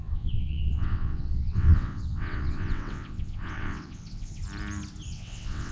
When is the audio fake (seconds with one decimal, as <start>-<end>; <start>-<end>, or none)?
0.0-4.4; 5.1-5.7